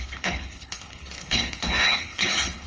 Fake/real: fake